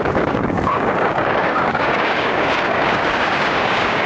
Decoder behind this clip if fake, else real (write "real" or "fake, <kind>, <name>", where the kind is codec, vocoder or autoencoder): fake, codec, DAC